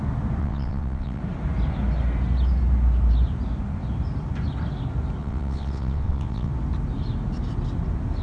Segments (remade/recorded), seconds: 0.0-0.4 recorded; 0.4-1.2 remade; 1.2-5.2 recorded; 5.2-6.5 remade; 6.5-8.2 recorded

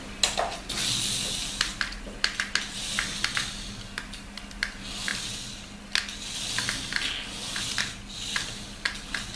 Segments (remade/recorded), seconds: 0.0-9.4 recorded

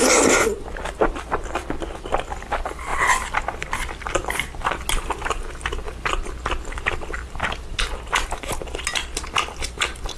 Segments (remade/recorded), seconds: 0.0-10.2 recorded

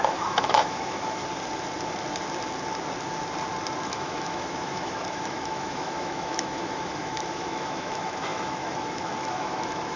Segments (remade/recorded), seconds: 0.0-1.2 remade; 1.2-3.9 recorded; 3.9-10.0 remade